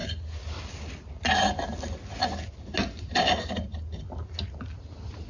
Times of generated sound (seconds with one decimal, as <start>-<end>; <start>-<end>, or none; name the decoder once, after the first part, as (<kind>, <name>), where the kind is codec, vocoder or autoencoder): none

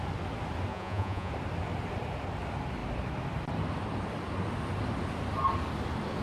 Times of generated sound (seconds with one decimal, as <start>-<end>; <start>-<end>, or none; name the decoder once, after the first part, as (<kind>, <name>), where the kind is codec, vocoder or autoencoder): 0.7-1.3 (vocoder, Vocos)

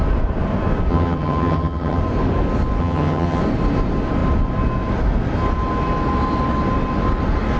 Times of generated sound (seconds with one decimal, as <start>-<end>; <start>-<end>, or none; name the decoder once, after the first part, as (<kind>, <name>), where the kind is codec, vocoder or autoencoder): 0.9-2.0 (vocoder, HiFi-GAN); 2.8-3.4

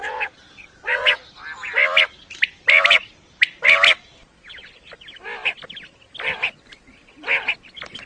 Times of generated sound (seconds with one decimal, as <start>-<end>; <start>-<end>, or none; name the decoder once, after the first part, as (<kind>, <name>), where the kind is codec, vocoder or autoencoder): 0.0-1.2 (vocoder, Vocos)

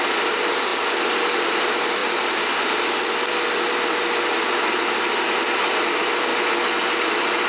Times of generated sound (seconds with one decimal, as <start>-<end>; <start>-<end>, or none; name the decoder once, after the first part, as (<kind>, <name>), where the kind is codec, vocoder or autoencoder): 0.0-6.3 (vocoder, BigVGAN v2); 7.0-7.5

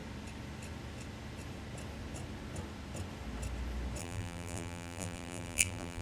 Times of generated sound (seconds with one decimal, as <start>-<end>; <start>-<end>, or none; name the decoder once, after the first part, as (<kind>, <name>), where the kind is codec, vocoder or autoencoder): 4.0-6.0 (vocoder, BigVGAN v2)